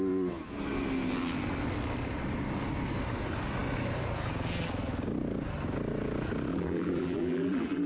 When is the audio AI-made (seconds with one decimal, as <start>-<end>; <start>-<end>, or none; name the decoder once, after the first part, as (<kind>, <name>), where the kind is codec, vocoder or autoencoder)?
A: 6.5-7.9 (vocoder, BigVGAN v2)